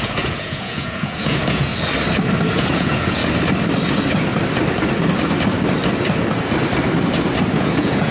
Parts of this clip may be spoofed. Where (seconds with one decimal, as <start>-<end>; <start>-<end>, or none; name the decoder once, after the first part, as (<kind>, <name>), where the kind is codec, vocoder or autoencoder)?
0.0-1.7 (vocoder, Vocos); 2.5-3.2; 7.5-8.1